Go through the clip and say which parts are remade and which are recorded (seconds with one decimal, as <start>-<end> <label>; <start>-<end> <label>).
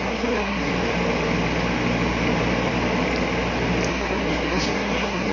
0.0-0.7 remade; 0.7-3.9 recorded; 3.9-5.3 remade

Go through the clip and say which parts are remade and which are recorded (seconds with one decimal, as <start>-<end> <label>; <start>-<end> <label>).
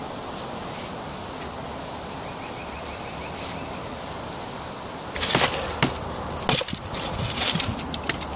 0.0-8.4 recorded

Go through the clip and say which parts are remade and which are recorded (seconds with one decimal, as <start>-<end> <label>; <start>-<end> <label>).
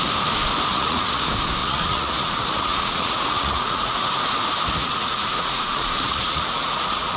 0.0-0.7 recorded; 0.7-1.2 remade; 1.2-1.6 recorded; 1.6-4.1 remade; 4.1-4.8 recorded; 4.8-7.2 remade